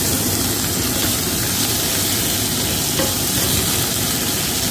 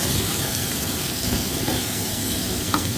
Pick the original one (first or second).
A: first